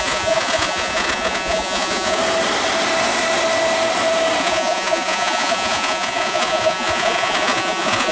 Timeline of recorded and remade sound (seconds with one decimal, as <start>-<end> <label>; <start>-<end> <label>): 0.0-2.2 remade; 2.2-4.4 recorded; 4.4-8.1 remade